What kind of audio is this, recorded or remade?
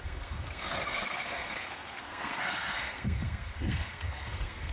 remade